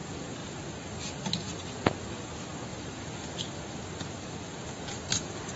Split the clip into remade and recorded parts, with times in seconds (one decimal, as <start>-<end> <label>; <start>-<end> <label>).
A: 0.0-5.6 recorded